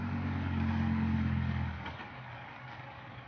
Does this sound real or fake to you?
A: fake